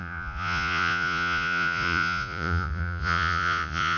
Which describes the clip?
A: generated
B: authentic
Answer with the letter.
A